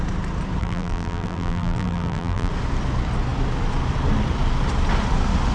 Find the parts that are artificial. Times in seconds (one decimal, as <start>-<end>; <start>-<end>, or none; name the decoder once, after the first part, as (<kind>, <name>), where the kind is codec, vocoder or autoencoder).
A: 0.6-2.5 (vocoder, BigVGAN v2)